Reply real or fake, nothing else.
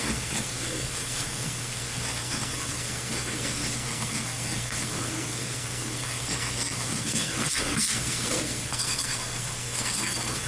fake